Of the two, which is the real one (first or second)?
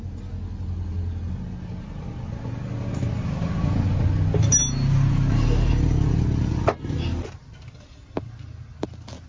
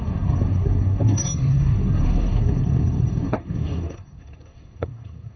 first